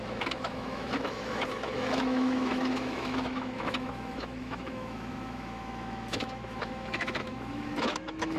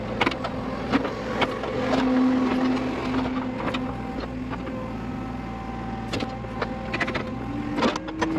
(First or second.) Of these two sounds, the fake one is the first